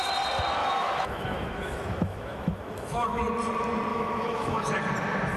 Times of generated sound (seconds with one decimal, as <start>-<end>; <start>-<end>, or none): 0.6-3.2; 3.9-4.6